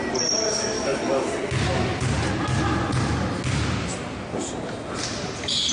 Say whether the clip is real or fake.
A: real